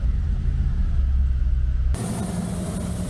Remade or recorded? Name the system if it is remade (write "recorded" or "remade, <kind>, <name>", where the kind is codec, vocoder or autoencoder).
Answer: recorded